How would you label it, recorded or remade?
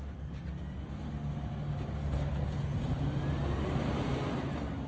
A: recorded